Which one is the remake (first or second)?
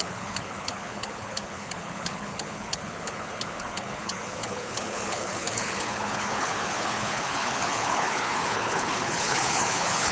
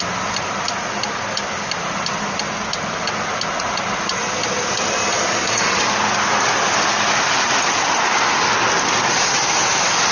first